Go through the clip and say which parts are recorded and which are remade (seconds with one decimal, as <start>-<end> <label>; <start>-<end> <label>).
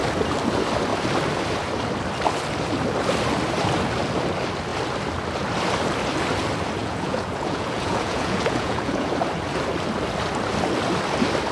0.0-6.8 recorded; 6.8-9.1 remade; 9.1-11.5 recorded